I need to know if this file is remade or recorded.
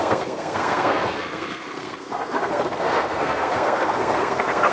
remade